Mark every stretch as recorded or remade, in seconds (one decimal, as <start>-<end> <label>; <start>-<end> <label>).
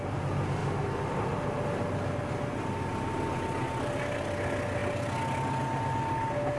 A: 0.0-6.6 recorded